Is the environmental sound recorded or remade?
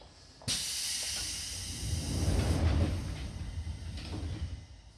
recorded